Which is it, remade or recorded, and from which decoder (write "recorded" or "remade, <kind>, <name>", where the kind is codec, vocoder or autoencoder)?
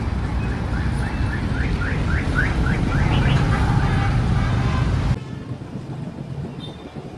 recorded